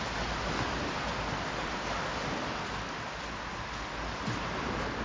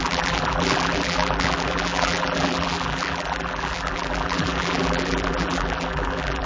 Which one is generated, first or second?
second